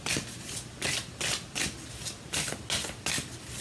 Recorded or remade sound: recorded